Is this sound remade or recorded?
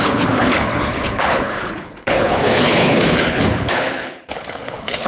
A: remade